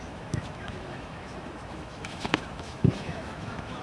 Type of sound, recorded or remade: remade